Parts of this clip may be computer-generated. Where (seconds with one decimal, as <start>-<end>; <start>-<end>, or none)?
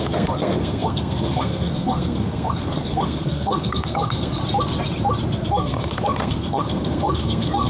0.0-4.4; 5.5-7.7